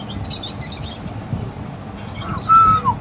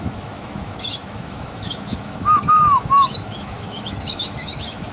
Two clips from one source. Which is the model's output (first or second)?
second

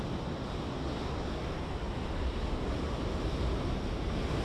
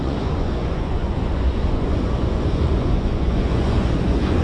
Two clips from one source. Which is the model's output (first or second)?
second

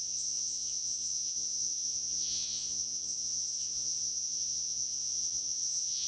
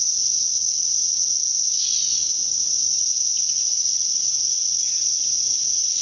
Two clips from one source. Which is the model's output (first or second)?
first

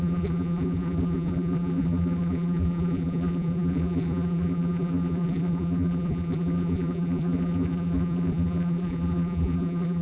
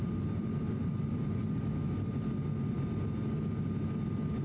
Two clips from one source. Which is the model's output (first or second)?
first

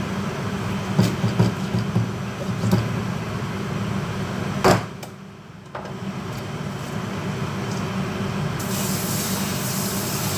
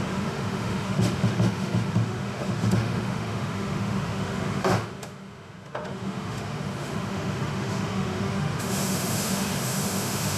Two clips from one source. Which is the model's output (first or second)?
second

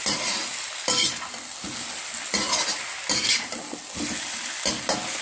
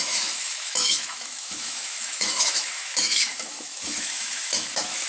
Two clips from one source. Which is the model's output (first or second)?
second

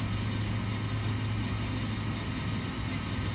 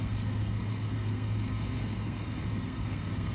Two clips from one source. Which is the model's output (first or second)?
second